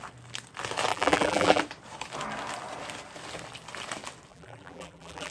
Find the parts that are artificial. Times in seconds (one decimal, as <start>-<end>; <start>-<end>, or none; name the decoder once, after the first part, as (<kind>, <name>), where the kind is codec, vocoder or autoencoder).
0.9-1.6 (vocoder, BigVGAN v2); 4.3-5.3

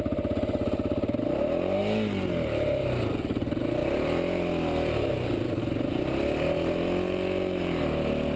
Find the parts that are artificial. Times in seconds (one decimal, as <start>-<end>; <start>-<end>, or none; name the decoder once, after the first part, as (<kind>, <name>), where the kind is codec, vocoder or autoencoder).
none

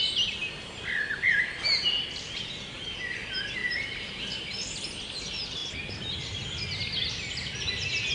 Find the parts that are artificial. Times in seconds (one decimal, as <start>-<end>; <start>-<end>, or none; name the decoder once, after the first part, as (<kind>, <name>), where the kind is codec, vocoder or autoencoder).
none

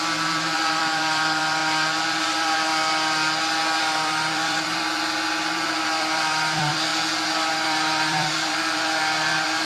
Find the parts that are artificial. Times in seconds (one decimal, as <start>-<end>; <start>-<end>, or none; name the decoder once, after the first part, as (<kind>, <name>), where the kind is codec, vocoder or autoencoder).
0.0-2.7 (vocoder, BigVGAN v2); 3.8-6.9; 7.5-9.6

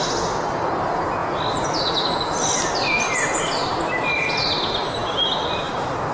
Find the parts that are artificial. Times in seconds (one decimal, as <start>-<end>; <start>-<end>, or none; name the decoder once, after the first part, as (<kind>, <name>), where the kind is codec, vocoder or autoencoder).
1.2-1.8 (vocoder, BigVGAN v2); 5.0-6.1